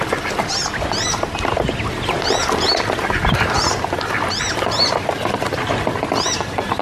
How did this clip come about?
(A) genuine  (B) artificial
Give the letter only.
A